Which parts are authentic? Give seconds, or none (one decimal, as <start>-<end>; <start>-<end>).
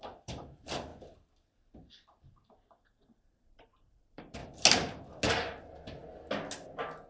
0.9-1.9; 4.4-5.3; 6.0-7.1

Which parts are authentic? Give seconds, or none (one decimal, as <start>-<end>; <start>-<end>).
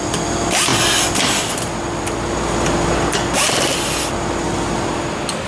0.0-5.5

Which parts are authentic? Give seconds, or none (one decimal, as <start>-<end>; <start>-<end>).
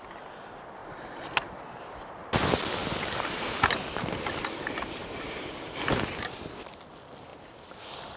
0.0-0.8; 2.1-2.8; 5.3-8.2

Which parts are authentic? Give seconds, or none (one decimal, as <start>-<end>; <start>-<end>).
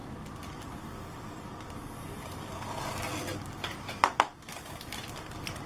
0.0-4.3; 4.8-5.7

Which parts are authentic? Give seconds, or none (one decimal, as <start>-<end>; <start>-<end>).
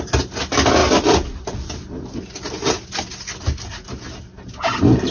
0.0-4.3